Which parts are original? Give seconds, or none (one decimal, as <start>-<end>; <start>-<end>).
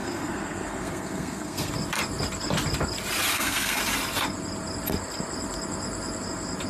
1.7-3.3; 3.8-6.7